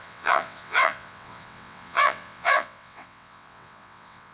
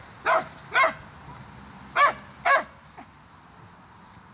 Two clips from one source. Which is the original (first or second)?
second